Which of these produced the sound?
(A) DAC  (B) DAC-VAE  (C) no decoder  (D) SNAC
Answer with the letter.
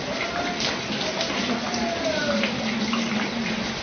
C